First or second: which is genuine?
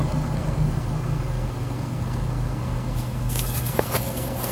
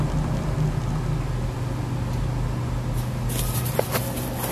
second